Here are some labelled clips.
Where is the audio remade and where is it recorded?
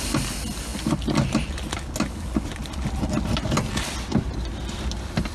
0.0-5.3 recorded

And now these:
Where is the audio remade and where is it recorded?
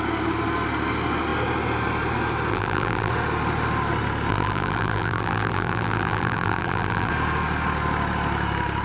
0.0-2.5 recorded; 2.5-3.1 remade; 3.1-4.3 recorded; 4.3-7.1 remade; 7.1-8.8 recorded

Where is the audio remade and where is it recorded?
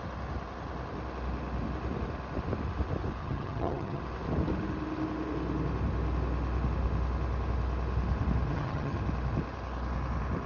0.0-3.2 recorded; 3.2-4.0 remade; 4.0-8.5 recorded; 8.5-9.0 remade; 9.0-10.5 recorded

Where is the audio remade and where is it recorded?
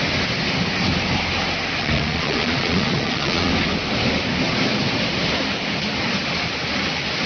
0.0-1.8 recorded; 1.8-3.5 remade; 3.5-7.3 recorded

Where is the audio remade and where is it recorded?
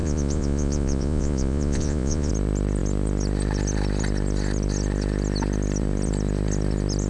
0.0-2.3 remade; 2.3-7.1 recorded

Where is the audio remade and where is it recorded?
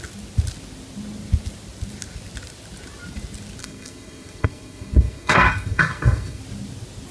0.0-3.6 recorded; 3.6-6.4 remade; 6.4-7.1 recorded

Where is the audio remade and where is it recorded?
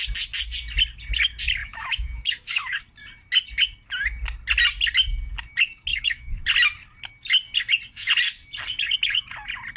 0.0-1.6 recorded; 1.6-2.8 remade; 2.8-5.9 recorded; 5.9-6.4 remade; 6.4-9.8 recorded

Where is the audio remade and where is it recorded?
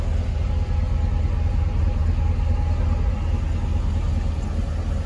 0.0-5.1 recorded